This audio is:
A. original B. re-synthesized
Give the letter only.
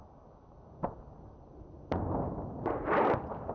A